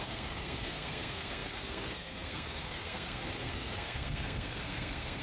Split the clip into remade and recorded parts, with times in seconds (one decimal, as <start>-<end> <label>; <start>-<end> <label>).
0.0-5.2 remade